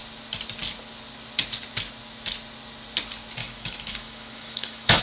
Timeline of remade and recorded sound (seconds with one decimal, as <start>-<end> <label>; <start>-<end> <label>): 0.0-3.4 recorded; 3.4-5.0 remade